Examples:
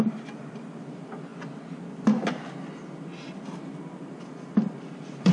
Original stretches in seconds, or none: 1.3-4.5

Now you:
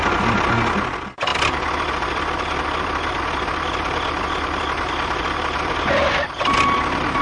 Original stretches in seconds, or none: 0.0-7.2

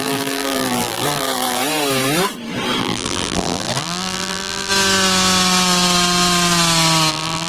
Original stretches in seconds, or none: 1.6-2.8; 4.7-7.1

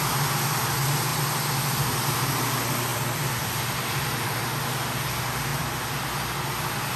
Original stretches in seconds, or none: 0.0-1.1; 2.1-2.9; 4.4-5.5; 6.1-7.0